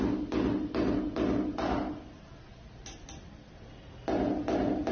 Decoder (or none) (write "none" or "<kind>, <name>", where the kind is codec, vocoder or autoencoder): none